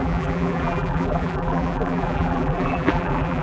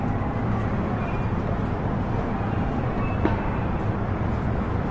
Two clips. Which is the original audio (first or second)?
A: second